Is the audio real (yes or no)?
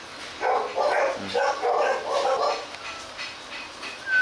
yes